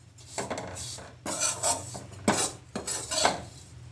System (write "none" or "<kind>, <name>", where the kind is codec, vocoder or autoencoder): none